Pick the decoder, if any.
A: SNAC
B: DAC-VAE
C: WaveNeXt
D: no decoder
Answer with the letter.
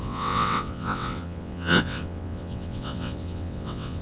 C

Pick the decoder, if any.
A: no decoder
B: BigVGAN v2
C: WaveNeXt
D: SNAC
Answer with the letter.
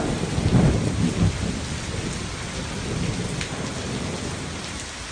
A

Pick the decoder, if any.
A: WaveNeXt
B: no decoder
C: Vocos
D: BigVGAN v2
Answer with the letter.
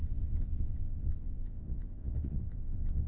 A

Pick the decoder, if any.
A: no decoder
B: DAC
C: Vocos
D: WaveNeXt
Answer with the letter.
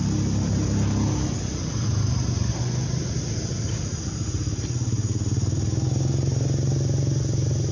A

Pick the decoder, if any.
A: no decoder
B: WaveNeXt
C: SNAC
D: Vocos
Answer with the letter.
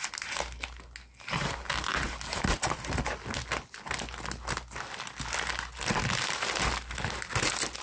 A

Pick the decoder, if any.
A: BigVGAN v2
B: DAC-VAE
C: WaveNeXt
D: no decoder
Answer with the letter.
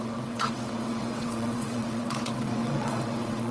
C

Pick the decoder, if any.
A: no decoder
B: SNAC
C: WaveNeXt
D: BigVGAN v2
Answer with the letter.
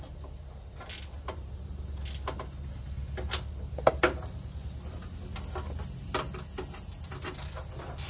A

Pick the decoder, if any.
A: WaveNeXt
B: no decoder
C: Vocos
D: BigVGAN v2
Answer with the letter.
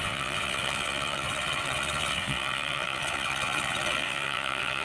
A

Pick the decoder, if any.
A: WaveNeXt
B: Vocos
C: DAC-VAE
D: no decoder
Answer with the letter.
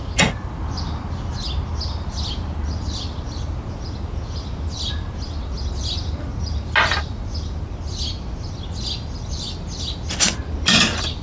D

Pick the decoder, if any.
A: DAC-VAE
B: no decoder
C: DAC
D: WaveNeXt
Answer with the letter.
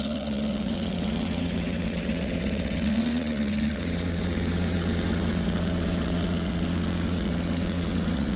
D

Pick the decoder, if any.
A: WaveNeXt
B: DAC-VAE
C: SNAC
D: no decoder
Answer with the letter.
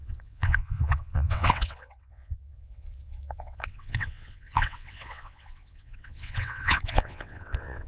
A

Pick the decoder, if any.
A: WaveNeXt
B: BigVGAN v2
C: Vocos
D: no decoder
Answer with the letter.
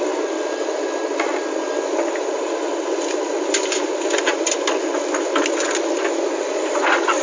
D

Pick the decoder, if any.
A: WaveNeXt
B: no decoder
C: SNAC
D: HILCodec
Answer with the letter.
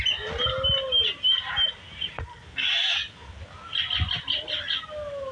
B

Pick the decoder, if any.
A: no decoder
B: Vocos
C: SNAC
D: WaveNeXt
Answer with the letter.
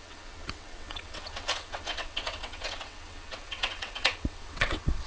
D